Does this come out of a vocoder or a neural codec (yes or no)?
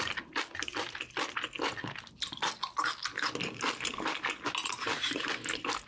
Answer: no